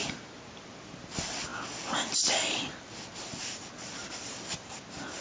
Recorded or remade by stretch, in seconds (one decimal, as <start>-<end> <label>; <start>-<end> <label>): 0.0-5.2 recorded

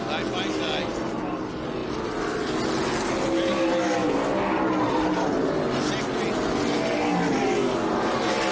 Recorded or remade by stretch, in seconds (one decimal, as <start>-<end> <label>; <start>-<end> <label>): 0.0-8.5 recorded

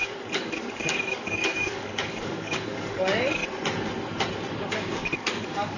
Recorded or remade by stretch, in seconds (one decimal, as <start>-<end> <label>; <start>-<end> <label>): 0.0-3.4 remade; 3.4-4.5 recorded; 4.5-5.8 remade

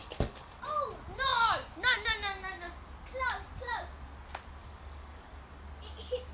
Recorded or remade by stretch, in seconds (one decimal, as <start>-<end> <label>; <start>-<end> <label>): 0.0-0.6 remade; 0.6-4.6 recorded; 4.6-5.4 remade; 5.4-6.3 recorded

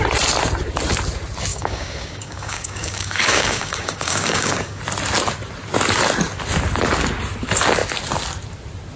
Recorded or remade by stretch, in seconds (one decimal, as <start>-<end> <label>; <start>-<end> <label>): 0.0-1.5 recorded; 1.5-4.8 remade; 4.8-9.0 recorded

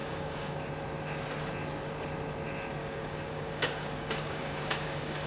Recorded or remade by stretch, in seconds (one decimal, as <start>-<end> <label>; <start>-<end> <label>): 0.0-0.7 remade; 0.7-2.8 recorded; 2.8-5.3 remade

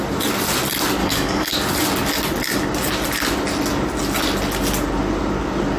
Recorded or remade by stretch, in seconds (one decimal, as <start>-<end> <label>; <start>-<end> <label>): 0.0-1.0 recorded; 1.0-1.5 remade; 1.5-5.8 recorded

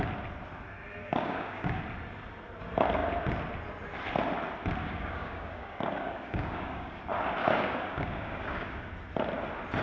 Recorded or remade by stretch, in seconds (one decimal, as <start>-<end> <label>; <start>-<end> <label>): 0.0-1.0 recorded; 1.0-1.8 remade; 1.8-4.8 recorded; 4.8-7.0 remade; 7.0-7.4 recorded; 7.4-8.9 remade; 8.9-9.8 recorded